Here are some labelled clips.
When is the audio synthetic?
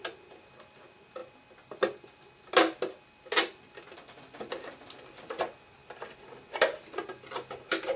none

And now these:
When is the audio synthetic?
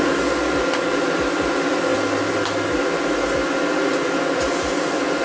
none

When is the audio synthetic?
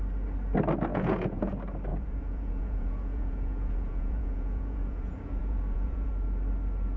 0.9-1.5 (vocoder, Vocos); 1.9-6.1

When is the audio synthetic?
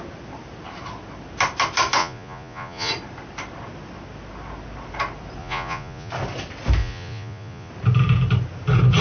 2.0-2.9 (vocoder, Vocos); 5.4-6.1; 6.8-7.7